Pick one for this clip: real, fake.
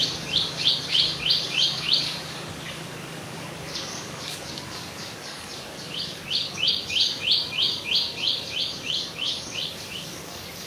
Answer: fake